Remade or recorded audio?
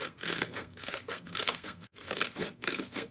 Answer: remade